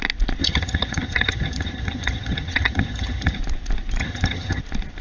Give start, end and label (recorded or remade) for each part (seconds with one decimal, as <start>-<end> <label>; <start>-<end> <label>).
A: 0.0-0.4 recorded; 0.4-3.4 remade; 3.4-4.0 recorded; 4.0-4.6 remade; 4.6-5.0 recorded